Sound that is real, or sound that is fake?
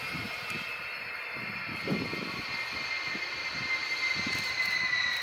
real